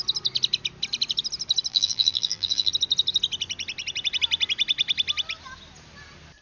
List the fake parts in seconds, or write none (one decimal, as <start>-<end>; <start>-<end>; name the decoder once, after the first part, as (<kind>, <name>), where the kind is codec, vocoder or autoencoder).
1.7-2.7 (vocoder, BigVGAN v2)